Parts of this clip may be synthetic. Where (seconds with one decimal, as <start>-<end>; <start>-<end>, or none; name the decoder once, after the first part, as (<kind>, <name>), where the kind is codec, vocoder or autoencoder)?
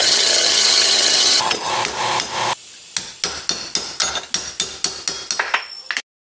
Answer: 0.0-1.7 (vocoder, HiFi-GAN)